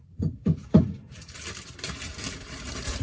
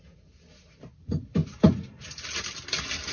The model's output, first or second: first